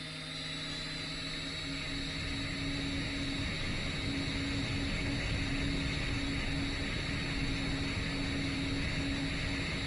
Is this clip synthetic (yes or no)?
no